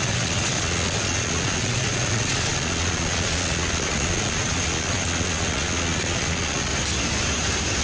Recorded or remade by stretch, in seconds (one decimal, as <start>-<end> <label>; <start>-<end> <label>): 0.0-6.7 remade; 6.7-7.8 recorded